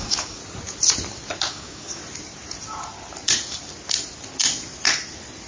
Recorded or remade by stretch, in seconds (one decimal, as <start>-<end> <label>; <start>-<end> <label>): 0.0-0.4 remade; 0.4-1.5 recorded; 1.5-2.0 remade; 2.0-5.5 recorded